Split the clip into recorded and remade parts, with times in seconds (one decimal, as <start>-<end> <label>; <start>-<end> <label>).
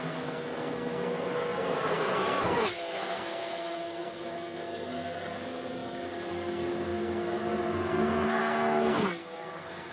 0.0-9.9 remade